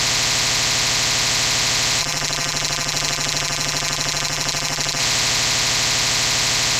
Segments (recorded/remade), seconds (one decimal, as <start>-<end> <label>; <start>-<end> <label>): 0.0-2.0 recorded; 2.0-5.0 remade; 5.0-6.8 recorded